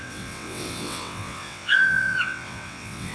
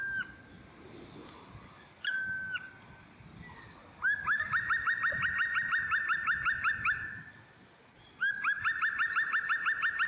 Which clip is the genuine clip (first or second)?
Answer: second